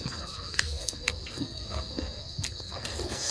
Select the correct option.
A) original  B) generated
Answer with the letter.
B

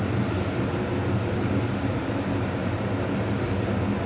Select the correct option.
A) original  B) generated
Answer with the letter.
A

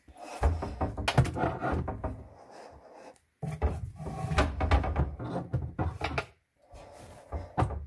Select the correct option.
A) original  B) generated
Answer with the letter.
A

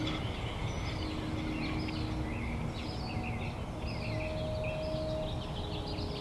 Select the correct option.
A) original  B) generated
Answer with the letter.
A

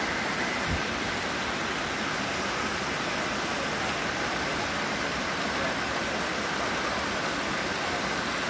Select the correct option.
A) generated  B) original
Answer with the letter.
B